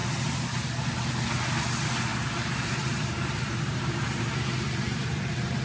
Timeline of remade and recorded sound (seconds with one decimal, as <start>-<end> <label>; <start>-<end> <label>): 0.0-2.1 recorded; 2.1-5.6 remade